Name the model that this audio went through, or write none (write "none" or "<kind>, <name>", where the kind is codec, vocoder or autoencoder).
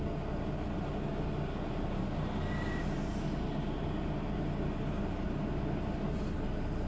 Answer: none